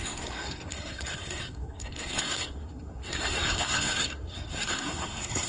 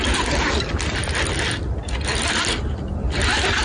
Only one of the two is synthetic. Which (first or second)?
first